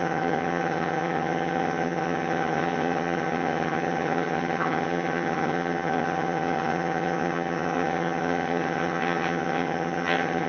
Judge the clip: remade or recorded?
remade